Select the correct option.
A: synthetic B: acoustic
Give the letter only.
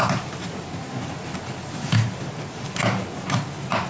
B